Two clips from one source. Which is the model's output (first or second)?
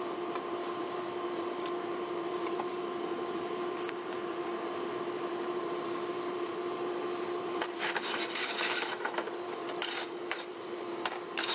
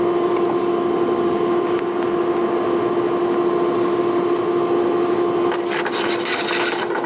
first